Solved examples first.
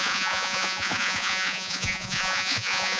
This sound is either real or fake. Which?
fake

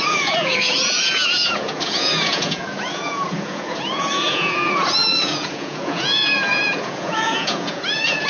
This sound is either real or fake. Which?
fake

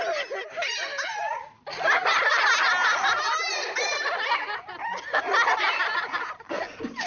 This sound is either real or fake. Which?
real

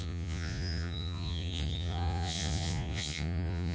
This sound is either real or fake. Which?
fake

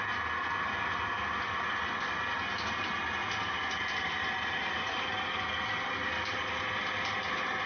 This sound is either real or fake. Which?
real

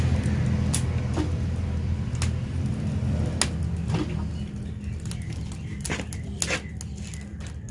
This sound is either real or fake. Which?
real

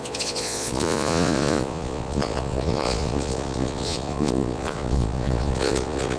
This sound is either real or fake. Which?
fake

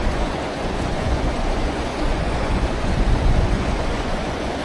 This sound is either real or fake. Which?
fake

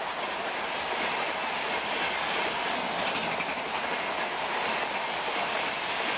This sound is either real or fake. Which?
real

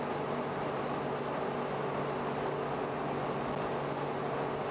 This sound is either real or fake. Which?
real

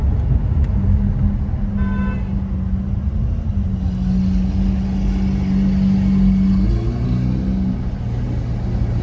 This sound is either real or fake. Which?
real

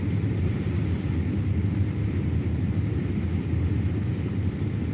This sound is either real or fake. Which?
real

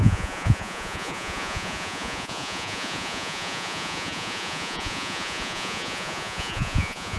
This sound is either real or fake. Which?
fake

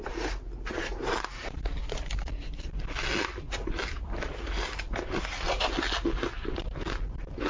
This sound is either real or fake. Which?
real